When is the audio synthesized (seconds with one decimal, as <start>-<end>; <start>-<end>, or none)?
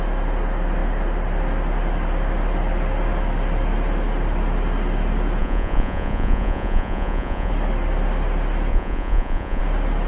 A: 5.4-7.5; 8.7-9.6